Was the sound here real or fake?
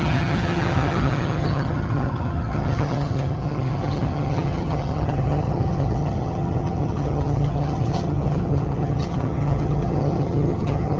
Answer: fake